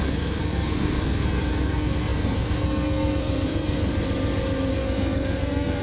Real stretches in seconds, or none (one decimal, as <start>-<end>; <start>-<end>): 3.9-4.7